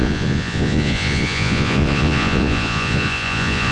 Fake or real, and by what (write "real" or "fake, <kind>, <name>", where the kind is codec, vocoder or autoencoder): fake, vocoder, Vocos